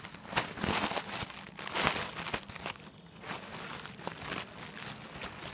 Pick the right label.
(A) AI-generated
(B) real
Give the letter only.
B